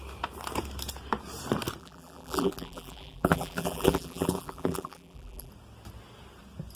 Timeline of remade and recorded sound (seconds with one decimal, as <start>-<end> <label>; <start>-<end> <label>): 0.0-1.8 recorded; 1.8-5.5 remade; 5.5-6.8 recorded